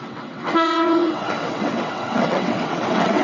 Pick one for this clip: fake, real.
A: fake